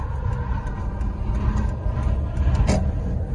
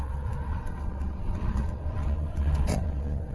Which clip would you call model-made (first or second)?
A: second